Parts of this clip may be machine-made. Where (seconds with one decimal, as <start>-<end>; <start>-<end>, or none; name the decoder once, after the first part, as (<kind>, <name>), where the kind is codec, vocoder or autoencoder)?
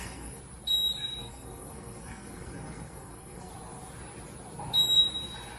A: 0.0-0.4 (codec, SNAC); 1.2-3.5